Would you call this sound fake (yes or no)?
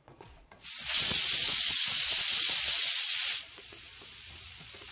yes